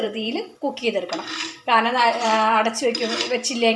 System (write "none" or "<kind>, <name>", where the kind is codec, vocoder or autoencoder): vocoder, BigVGAN v2